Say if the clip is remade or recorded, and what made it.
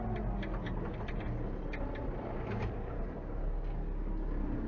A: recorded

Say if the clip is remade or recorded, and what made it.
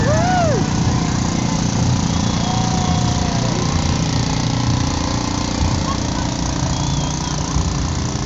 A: recorded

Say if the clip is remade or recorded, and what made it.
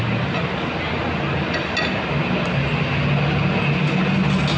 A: recorded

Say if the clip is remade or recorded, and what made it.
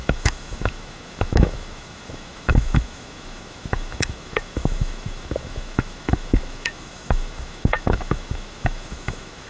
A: remade, autoencoder, DAC-VAE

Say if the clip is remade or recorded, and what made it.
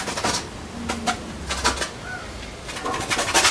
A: recorded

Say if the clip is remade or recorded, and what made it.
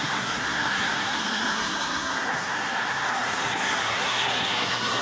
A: remade, codec, SNAC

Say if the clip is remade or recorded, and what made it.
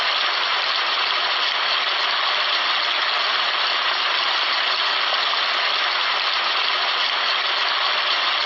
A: recorded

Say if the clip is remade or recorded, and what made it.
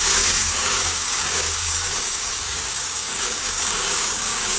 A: remade, codec, DAC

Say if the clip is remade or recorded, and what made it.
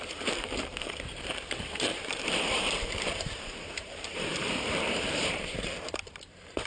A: remade, vocoder, BigVGAN v2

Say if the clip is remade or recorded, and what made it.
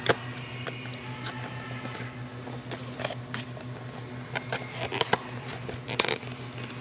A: recorded